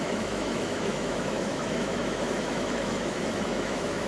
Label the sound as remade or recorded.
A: remade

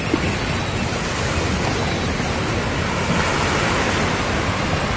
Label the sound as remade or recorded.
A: recorded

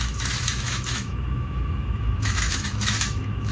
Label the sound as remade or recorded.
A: remade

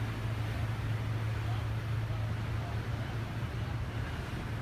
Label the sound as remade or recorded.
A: recorded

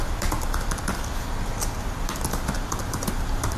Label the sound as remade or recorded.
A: recorded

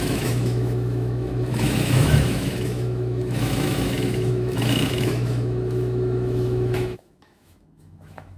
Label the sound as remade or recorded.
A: remade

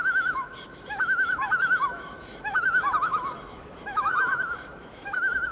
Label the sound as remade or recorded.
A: remade